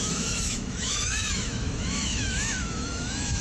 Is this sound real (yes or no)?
no